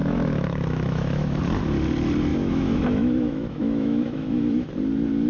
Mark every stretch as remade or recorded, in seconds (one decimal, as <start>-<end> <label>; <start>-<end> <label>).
0.0-1.4 remade; 1.4-2.3 recorded; 2.3-4.7 remade; 4.7-5.3 recorded